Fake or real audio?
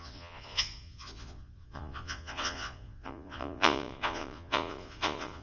fake